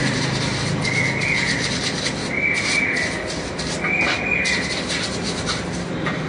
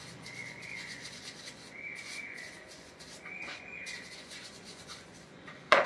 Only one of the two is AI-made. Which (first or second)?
second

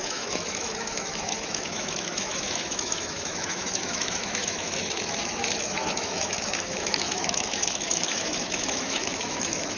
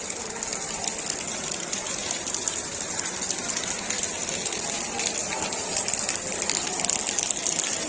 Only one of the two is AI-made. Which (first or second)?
first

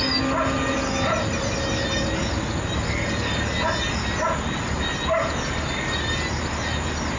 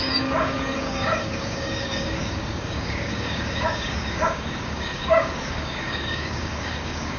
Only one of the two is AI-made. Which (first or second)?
second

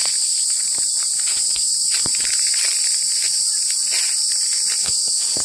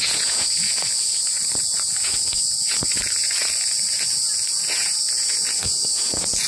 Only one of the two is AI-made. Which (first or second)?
second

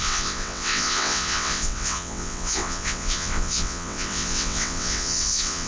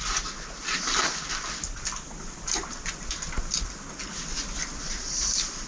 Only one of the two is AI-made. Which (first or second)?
first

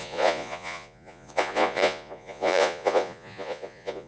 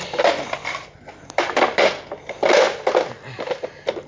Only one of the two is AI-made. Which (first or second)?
first